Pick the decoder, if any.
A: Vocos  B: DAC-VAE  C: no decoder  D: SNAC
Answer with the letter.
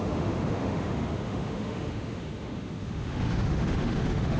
B